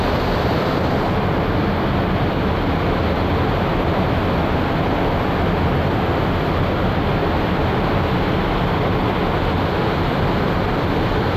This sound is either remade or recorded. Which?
recorded